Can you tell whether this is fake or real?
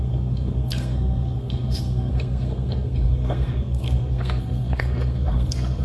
fake